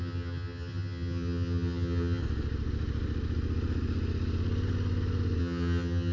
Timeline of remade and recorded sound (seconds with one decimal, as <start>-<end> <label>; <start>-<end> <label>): 0.0-2.2 remade; 2.2-5.4 recorded; 5.4-6.1 remade